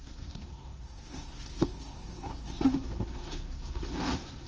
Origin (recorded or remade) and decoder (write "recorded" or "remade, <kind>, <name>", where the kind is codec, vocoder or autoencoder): remade, codec, SNAC